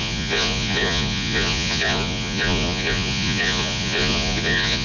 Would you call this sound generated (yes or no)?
yes